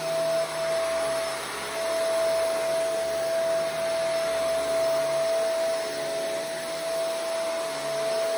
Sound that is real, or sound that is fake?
real